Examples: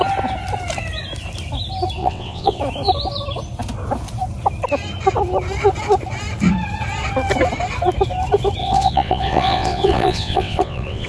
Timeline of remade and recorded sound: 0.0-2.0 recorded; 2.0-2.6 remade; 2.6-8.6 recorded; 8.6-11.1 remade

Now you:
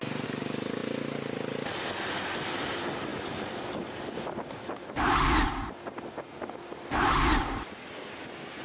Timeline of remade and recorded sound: 0.0-8.6 recorded